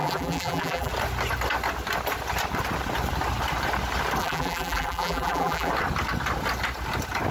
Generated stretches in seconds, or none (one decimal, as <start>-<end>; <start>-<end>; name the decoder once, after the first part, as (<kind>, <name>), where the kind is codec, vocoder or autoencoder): 0.0-0.9 (vocoder, BigVGAN v2); 4.2-5.7